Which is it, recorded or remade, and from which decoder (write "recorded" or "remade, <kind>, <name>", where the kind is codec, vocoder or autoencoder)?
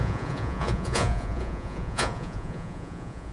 remade, vocoder, Vocos